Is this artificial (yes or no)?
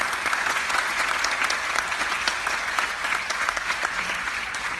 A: yes